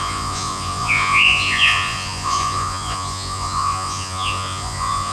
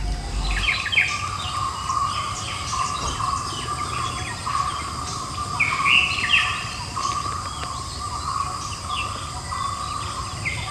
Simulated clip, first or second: first